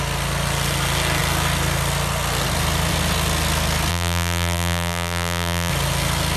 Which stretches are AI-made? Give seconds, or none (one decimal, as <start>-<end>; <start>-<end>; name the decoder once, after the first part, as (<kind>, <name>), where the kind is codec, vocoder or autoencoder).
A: 3.9-5.7 (vocoder, BigVGAN v2)